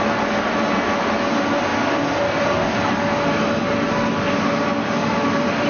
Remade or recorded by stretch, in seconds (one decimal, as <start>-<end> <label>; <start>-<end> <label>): 0.0-5.0 recorded; 5.0-5.7 remade